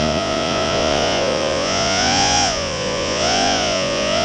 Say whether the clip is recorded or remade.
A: remade